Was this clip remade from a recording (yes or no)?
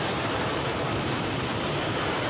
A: yes